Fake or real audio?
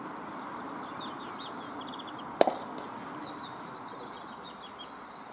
real